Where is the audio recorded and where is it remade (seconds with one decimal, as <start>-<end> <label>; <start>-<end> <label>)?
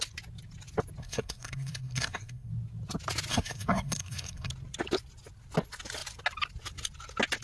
0.0-1.0 recorded; 1.0-2.5 remade; 2.5-3.3 recorded; 3.3-4.5 remade; 4.5-7.4 recorded